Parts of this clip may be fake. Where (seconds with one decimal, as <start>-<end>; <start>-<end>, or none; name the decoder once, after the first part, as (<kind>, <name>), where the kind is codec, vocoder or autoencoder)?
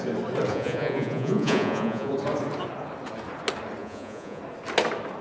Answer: 0.5-2.1 (vocoder, Vocos); 3.8-4.4